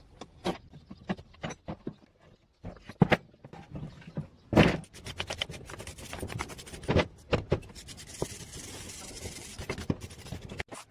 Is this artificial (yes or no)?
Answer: no